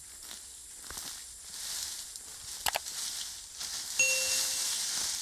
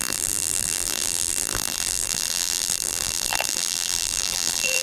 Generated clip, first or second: second